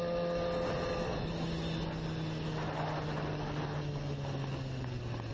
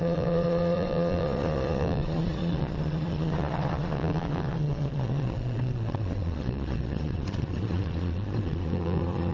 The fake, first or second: second